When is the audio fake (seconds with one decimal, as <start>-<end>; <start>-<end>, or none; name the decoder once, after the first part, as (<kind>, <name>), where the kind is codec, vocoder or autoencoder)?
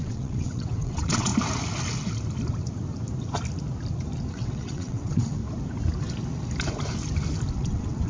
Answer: 0.0-1.3 (vocoder, WaveNeXt); 4.3-5.4; 7.5-8.1